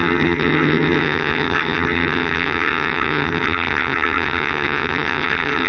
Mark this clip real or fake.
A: fake